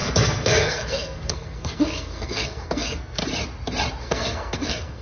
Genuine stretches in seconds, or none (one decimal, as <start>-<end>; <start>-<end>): 3.2-4.0